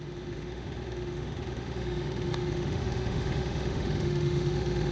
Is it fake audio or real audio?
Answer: fake